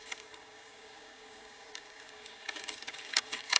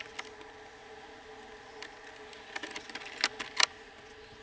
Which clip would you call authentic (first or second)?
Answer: second